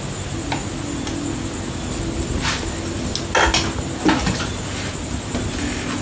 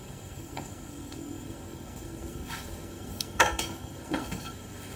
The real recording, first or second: first